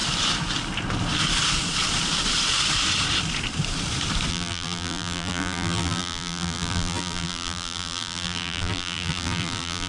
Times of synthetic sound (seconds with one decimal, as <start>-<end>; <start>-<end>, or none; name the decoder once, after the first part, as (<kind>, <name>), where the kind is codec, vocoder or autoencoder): 4.3-9.9 (vocoder, BigVGAN v2)